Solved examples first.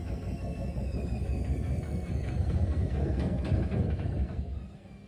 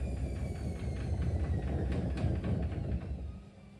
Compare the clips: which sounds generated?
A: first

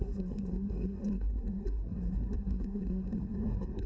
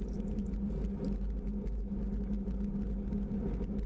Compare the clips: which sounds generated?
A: first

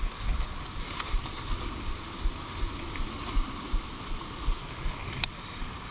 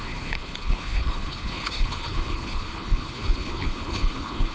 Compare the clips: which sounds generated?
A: second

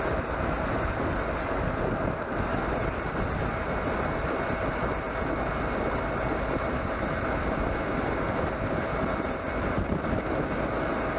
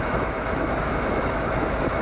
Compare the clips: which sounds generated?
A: second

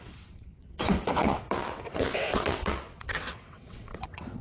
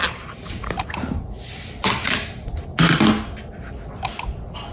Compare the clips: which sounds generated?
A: first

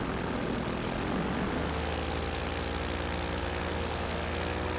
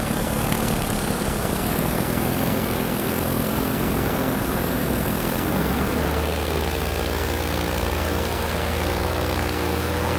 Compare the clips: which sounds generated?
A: second